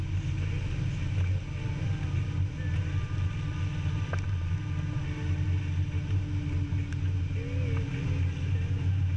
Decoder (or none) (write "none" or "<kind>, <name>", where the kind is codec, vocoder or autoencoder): none